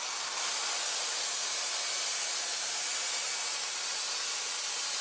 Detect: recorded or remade recorded